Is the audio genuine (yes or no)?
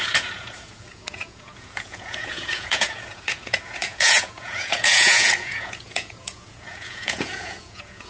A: no